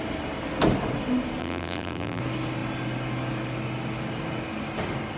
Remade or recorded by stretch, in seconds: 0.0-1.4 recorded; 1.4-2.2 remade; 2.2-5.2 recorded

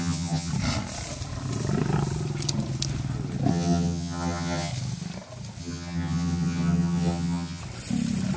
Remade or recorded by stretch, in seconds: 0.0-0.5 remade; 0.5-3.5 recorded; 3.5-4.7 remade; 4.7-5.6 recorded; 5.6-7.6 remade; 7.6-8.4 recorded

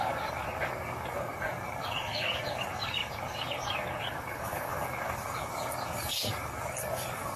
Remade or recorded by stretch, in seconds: 0.0-7.4 remade

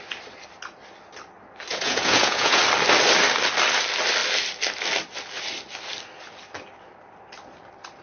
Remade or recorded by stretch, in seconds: 0.0-1.7 recorded; 1.7-2.6 remade; 2.6-8.0 recorded

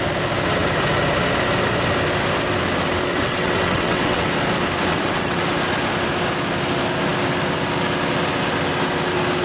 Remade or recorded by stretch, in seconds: 0.0-3.1 recorded; 3.1-4.3 remade; 4.3-4.9 recorded; 4.9-5.4 remade; 5.4-9.4 recorded

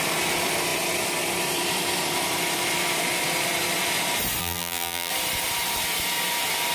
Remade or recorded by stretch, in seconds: 0.0-4.4 recorded; 4.4-5.1 remade; 5.1-6.7 recorded

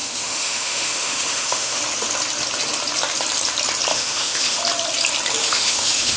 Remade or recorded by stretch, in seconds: 0.0-1.8 remade; 1.8-3.9 recorded; 3.9-4.6 remade; 4.6-5.4 recorded; 5.4-6.2 remade

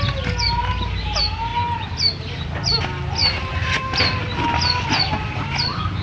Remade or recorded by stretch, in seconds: 0.0-3.2 recorded; 3.2-4.2 remade; 4.2-6.0 recorded